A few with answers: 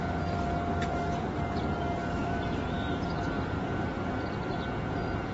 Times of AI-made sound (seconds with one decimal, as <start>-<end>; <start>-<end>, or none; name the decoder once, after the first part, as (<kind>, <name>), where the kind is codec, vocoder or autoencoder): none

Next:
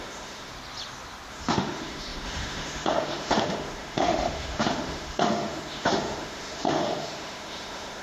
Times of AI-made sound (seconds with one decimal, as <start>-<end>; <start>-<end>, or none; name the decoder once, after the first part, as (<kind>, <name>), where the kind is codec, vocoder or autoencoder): 0.0-0.5 (autoencoder, DAC-VAE); 1.3-8.0

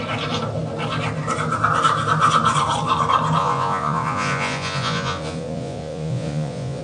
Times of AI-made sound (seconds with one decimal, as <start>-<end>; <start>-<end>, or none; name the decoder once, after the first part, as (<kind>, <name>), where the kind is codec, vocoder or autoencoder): 3.4-6.8 (vocoder, Vocos)